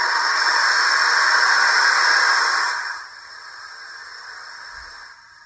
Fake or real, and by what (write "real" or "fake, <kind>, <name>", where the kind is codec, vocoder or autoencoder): real